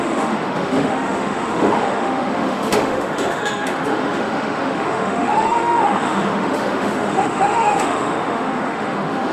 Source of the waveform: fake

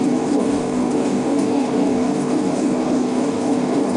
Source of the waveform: fake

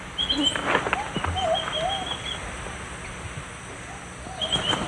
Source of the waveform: real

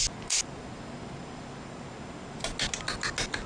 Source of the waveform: real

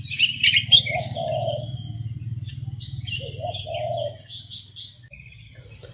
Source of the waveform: real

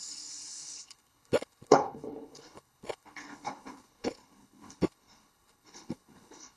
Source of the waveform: fake